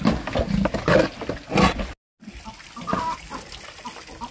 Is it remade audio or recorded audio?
recorded